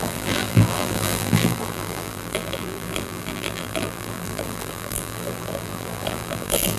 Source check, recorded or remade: remade